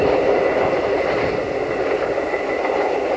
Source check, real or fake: real